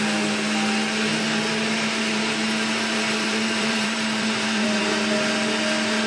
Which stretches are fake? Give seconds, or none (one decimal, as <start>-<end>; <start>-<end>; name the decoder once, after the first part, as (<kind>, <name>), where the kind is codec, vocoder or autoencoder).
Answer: 1.1-4.8 (vocoder, BigVGAN v2)